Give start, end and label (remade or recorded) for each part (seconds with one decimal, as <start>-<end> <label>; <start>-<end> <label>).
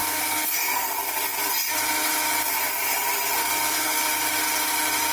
0.0-0.9 remade; 0.9-3.4 recorded; 3.4-4.0 remade; 4.0-5.1 recorded